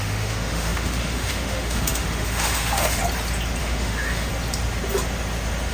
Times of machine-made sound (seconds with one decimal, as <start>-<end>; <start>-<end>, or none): 0.0-3.0; 3.6-4.3